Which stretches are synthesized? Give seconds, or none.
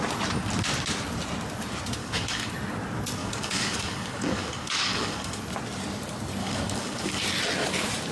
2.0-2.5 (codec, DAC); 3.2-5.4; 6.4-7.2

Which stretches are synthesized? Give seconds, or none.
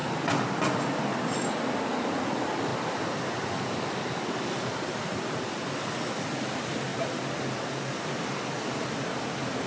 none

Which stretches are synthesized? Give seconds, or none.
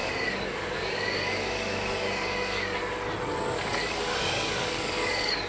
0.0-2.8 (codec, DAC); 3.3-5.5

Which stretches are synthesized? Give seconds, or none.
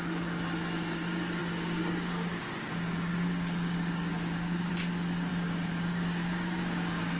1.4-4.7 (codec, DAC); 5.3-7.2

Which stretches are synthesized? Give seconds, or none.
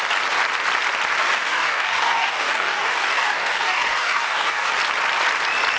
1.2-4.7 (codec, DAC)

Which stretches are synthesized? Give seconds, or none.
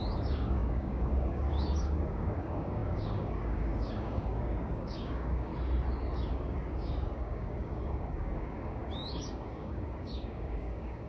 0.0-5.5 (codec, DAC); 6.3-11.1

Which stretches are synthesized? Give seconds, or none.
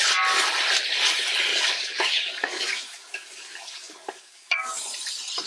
1.5-4.8 (codec, DAC)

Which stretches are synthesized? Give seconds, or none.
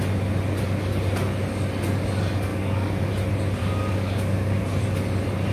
2.5-3.1 (codec, DAC); 3.6-4.6